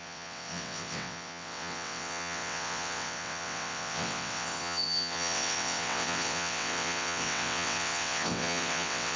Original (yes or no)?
no